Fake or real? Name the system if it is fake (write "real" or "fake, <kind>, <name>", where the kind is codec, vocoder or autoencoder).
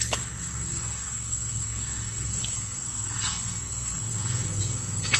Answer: fake, codec, SNAC